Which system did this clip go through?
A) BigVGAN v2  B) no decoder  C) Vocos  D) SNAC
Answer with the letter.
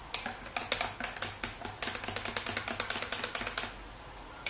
B